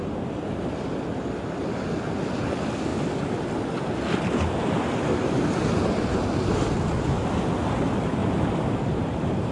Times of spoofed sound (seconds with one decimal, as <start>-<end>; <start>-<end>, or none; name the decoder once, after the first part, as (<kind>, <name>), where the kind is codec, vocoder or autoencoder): none